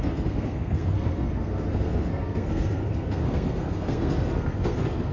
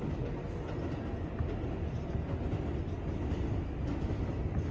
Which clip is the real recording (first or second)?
second